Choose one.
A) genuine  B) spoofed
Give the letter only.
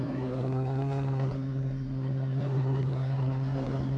B